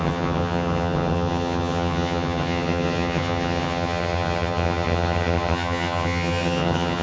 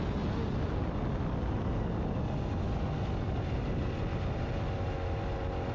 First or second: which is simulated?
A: first